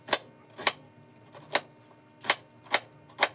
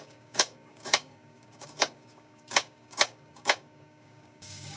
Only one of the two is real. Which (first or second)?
first